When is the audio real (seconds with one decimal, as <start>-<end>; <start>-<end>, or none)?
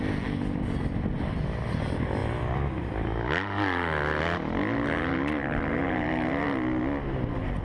0.0-7.6